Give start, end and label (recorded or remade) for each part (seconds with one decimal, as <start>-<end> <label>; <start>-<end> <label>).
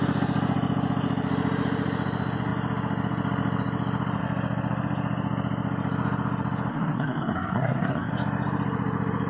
0.0-6.7 recorded; 6.7-8.1 remade; 8.1-9.3 recorded